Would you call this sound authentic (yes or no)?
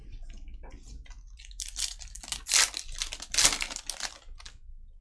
yes